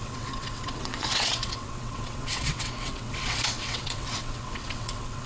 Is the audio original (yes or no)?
no